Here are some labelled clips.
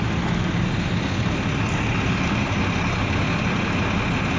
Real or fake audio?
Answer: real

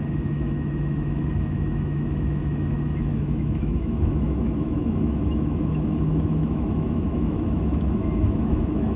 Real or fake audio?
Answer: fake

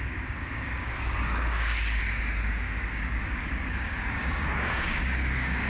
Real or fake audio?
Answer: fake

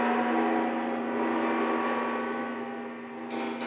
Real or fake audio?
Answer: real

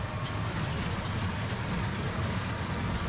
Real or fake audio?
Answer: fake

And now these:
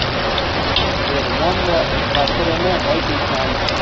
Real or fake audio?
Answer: real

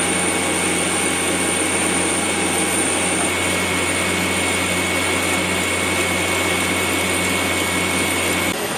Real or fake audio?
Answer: real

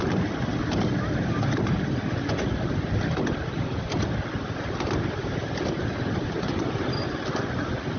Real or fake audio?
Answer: real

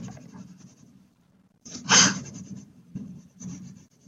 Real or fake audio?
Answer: fake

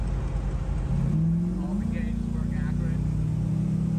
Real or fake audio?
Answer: real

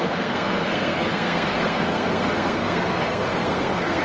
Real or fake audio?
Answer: fake